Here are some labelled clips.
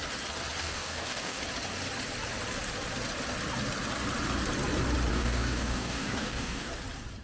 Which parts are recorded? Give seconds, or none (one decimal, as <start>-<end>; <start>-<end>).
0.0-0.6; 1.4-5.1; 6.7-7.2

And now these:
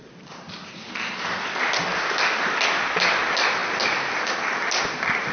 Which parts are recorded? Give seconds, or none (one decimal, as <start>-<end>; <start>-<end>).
0.0-5.3

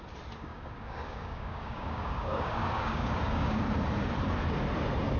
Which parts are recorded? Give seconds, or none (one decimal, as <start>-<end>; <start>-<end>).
0.0-0.5; 3.6-5.2

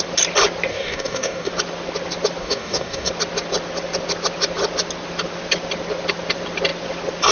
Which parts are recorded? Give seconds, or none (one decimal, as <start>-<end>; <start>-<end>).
0.0-0.7; 1.5-2.4; 3.1-7.3

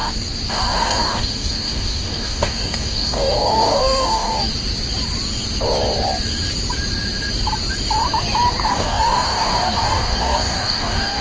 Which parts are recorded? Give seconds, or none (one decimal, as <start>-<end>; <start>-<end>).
0.0-0.5; 4.5-8.7

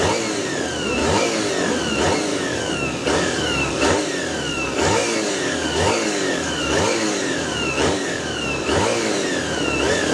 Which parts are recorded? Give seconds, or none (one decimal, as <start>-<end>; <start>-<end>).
0.0-1.0; 1.5-2.3; 4.0-4.5; 9.1-10.1

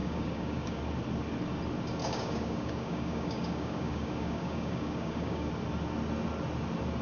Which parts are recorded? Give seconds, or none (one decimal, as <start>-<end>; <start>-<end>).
0.8-2.0; 5.5-7.0